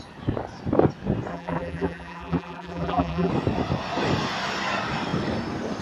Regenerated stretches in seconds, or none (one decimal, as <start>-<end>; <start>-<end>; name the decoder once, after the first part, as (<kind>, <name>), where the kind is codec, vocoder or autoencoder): 1.3-3.3 (vocoder, BigVGAN v2)